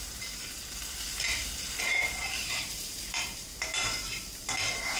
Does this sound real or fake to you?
fake